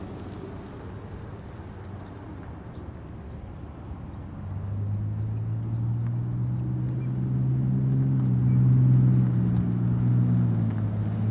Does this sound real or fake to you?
real